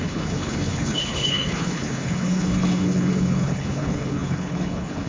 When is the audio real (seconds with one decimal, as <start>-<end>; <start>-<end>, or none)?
none

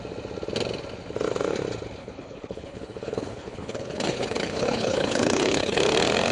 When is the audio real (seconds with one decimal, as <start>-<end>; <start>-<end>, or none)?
0.0-2.0; 5.8-6.3

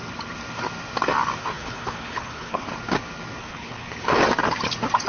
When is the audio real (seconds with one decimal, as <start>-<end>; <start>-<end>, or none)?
0.0-1.4; 2.7-3.4; 4.2-5.1

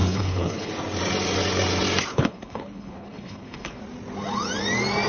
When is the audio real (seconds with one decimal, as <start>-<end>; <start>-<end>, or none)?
0.7-2.1; 3.8-5.1

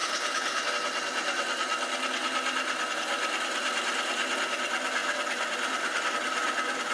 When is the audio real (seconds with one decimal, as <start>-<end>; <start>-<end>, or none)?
0.7-6.9

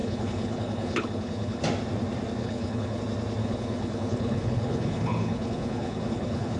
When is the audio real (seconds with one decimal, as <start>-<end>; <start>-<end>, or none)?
1.6-2.4; 3.0-3.4

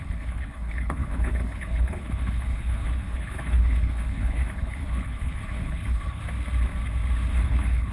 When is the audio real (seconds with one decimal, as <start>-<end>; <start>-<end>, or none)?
6.2-7.3